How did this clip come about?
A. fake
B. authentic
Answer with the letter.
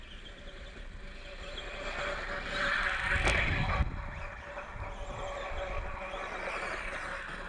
B